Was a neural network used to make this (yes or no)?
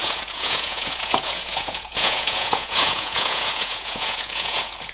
yes